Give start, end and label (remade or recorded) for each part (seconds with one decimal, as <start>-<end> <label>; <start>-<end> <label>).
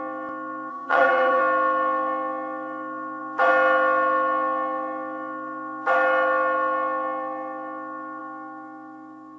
0.0-0.7 recorded; 0.7-1.4 remade; 1.4-9.4 recorded